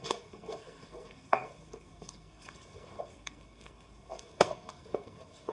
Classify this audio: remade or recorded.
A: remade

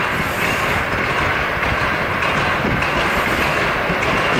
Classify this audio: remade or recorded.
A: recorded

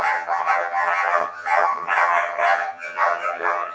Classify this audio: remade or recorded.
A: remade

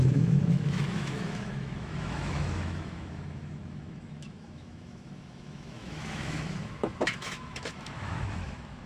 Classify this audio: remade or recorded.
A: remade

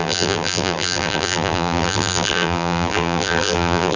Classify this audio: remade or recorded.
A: remade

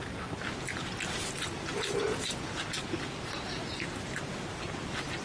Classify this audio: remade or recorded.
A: recorded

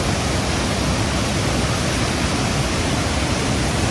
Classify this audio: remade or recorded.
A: recorded